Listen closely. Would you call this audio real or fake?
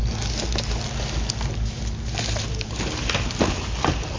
real